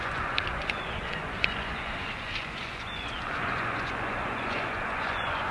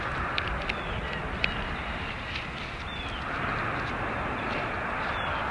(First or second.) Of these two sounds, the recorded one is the second